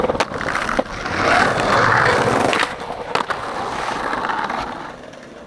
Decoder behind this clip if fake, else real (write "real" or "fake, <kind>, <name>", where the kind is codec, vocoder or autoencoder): real